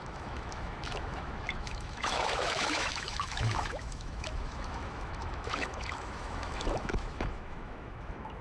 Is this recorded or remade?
remade